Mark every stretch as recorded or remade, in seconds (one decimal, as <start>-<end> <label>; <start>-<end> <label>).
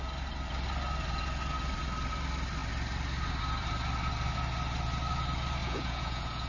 0.0-5.6 recorded; 5.6-6.5 remade